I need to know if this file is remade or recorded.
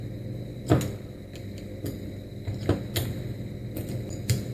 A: recorded